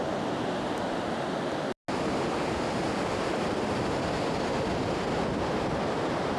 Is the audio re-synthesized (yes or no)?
no